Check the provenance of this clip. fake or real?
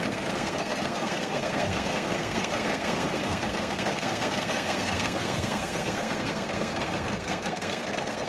fake